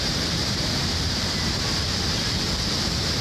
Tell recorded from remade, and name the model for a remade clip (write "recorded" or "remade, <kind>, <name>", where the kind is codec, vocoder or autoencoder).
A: remade, vocoder, BigVGAN v2